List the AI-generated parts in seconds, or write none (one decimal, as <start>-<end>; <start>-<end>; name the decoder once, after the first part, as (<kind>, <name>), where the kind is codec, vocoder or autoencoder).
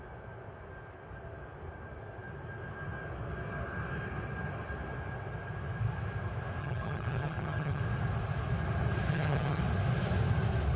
6.6-7.8 (vocoder, HiFi-GAN); 9.1-9.6